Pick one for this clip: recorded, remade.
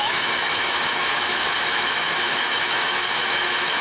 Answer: remade